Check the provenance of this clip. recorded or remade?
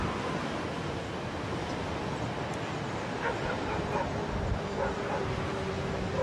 recorded